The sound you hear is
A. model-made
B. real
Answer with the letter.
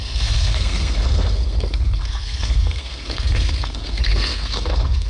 A